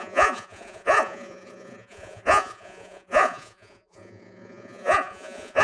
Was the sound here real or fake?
fake